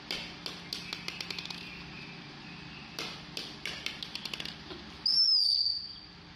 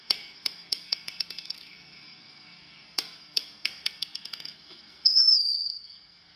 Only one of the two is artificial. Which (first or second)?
second